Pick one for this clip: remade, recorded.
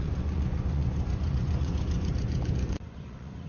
remade